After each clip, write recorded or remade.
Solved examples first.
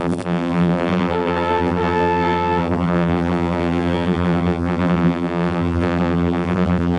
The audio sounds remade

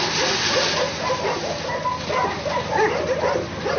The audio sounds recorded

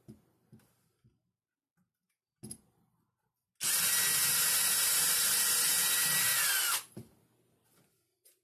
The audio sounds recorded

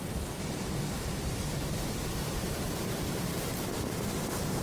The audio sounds recorded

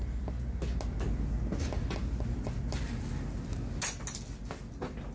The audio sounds recorded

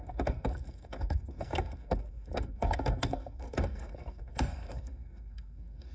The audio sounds remade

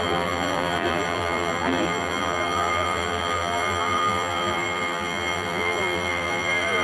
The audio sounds remade